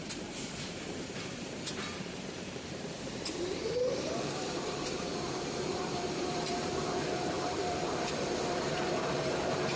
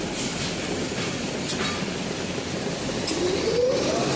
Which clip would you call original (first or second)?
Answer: second